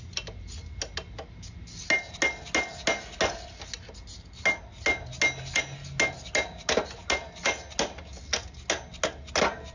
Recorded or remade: recorded